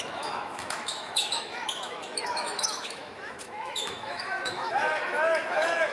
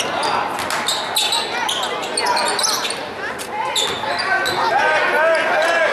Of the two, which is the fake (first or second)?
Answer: first